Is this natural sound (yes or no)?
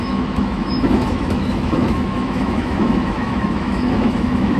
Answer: no